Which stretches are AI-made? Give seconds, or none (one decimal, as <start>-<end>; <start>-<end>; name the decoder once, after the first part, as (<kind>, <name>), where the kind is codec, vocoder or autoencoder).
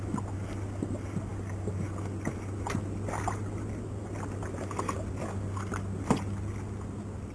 none